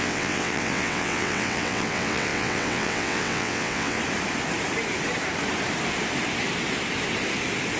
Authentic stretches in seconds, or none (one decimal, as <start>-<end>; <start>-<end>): 4.0-7.8